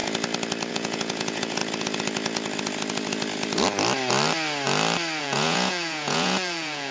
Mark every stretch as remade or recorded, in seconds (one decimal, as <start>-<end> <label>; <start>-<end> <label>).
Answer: 0.0-0.7 recorded; 0.7-1.6 remade; 1.6-5.2 recorded; 5.2-6.9 remade